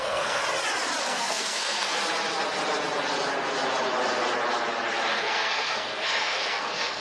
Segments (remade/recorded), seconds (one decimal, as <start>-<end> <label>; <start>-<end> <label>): 0.0-0.4 remade; 0.4-1.0 recorded; 1.0-2.0 remade; 2.0-5.1 recorded; 5.1-7.0 remade